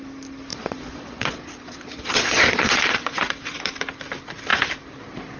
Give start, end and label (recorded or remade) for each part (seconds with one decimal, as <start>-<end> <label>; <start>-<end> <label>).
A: 0.0-0.5 recorded; 0.5-3.7 remade; 3.7-5.4 recorded